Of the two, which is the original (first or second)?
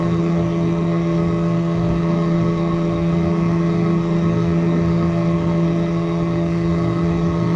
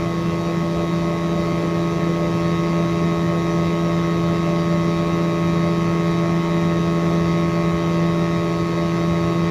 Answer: second